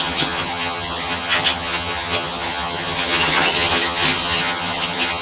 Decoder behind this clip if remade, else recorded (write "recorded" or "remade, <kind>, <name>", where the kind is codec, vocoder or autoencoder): remade, vocoder, HiFi-GAN